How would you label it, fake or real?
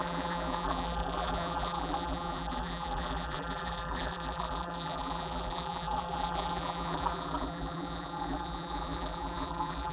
fake